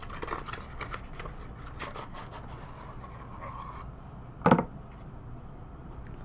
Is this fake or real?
real